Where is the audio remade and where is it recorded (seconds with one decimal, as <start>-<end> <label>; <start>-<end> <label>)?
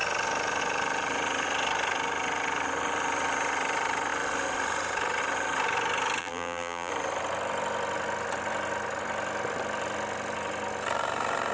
0.0-6.2 recorded; 6.2-6.9 remade; 6.9-11.5 recorded